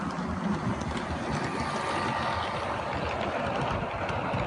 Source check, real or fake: real